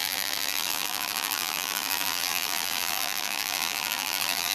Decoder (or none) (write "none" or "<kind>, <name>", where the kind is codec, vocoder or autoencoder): vocoder, BigVGAN v2